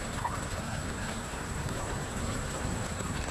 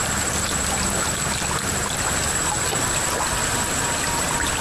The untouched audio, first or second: second